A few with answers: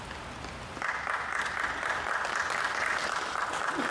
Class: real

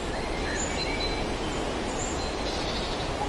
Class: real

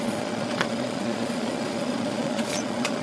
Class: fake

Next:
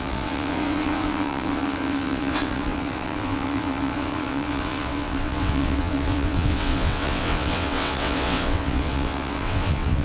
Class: fake